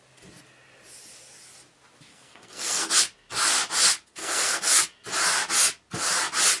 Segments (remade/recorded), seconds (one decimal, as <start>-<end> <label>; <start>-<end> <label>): 0.0-2.1 recorded; 2.1-3.0 remade; 3.0-4.1 recorded; 4.1-4.8 remade; 4.8-6.6 recorded